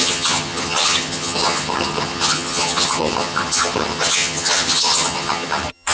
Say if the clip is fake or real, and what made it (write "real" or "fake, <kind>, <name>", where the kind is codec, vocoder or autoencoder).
fake, vocoder, HiFi-GAN